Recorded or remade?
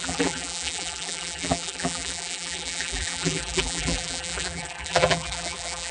remade